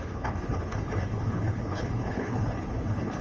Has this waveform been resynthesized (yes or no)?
yes